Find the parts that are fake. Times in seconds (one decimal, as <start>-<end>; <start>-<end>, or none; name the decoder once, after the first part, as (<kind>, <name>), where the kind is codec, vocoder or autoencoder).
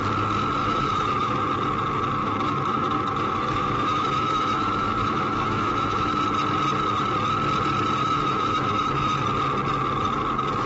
0.6-1.4 (autoencoder, DAC-VAE); 2.2-6.2; 8.0-9.2